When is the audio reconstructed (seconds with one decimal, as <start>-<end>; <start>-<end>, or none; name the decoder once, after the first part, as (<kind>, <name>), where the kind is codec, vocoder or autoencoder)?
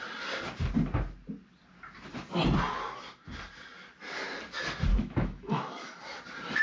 4.9-6.0 (autoencoder, DAC-VAE)